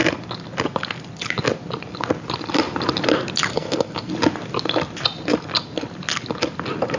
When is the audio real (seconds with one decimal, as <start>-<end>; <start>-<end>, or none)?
0.0-3.5; 4.1-7.0